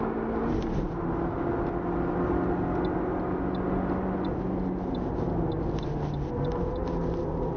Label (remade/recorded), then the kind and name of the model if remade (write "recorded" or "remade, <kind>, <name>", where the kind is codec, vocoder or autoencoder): recorded